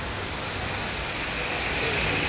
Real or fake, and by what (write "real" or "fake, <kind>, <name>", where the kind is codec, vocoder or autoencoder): real